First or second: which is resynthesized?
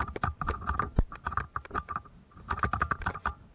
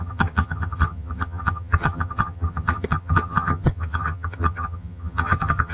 second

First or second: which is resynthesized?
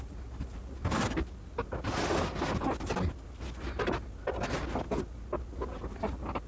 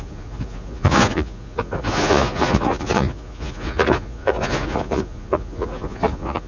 second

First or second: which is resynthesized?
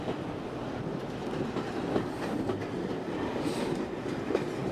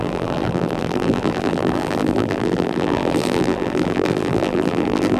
second